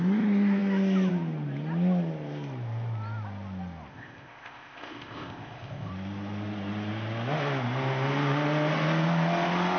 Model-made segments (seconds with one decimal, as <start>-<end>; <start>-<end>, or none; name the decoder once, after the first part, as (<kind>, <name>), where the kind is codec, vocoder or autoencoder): 3.9-5.9 (codec, ZipCodec)